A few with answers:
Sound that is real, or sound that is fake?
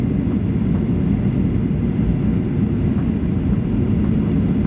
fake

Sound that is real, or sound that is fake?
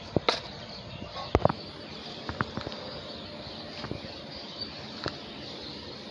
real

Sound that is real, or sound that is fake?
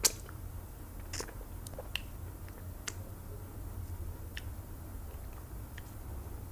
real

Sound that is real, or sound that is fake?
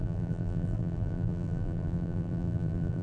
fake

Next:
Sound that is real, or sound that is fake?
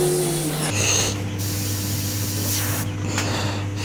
real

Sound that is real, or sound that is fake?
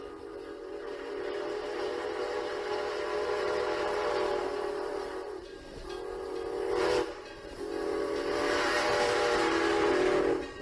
fake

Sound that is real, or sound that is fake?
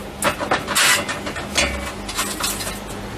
real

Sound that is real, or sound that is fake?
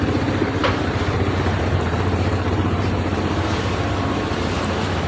fake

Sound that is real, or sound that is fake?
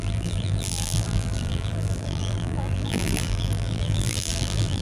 fake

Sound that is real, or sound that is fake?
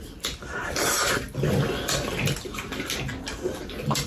real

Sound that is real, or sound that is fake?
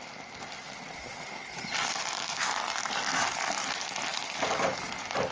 real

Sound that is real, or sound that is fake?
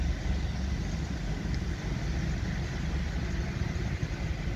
real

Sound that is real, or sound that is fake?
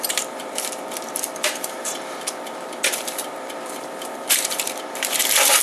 fake